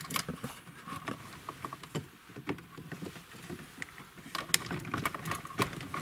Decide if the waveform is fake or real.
real